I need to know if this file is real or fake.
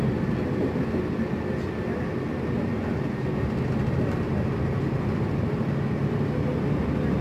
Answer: real